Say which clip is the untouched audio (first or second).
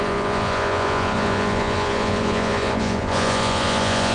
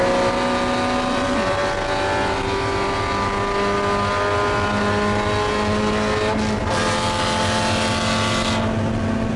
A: second